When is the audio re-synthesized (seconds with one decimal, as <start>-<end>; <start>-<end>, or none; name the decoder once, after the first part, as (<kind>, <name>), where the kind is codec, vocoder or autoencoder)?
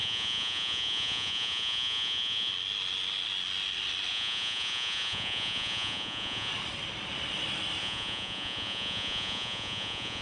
0.0-2.5 (vocoder, Vocos); 4.1-6.5; 7.8-10.2